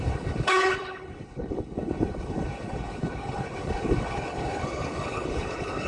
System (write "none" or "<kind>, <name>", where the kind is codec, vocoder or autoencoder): codec, HILCodec